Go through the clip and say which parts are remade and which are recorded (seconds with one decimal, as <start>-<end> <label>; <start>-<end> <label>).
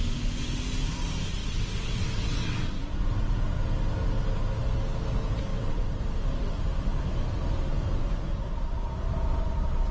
0.0-1.4 recorded; 1.4-3.3 remade; 3.3-5.5 recorded; 5.5-6.0 remade; 6.0-9.9 recorded